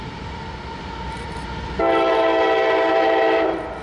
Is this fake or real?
real